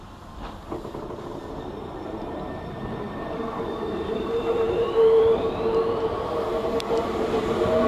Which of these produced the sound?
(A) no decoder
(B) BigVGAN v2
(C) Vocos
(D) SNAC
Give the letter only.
B